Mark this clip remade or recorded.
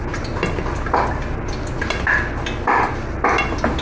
recorded